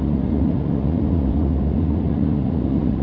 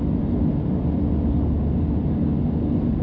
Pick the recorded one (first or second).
second